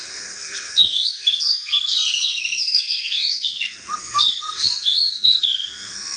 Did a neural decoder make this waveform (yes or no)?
yes